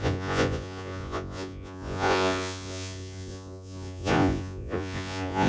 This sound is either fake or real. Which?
fake